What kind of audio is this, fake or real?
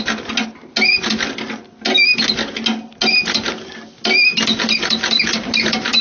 real